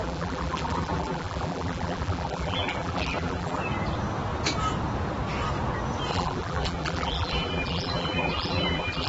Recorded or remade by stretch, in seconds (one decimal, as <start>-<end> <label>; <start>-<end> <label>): 0.0-3.6 remade; 3.6-6.1 recorded; 6.1-9.1 remade